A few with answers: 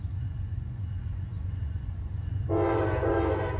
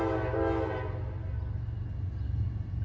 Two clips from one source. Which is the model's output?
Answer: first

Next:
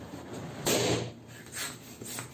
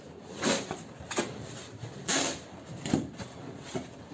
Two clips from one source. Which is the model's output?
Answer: second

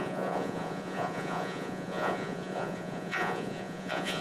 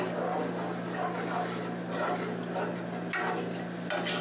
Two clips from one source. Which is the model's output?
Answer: first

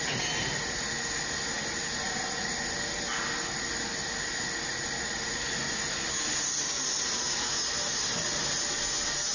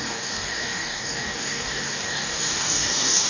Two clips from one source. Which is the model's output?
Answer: second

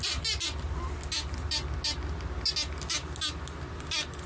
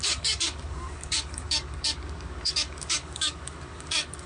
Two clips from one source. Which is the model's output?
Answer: second